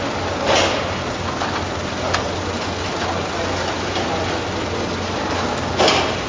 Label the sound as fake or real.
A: real